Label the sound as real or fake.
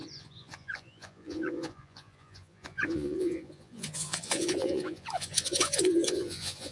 fake